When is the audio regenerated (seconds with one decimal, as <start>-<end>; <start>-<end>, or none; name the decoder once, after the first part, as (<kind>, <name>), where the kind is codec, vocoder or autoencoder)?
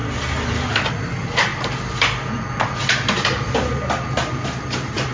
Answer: none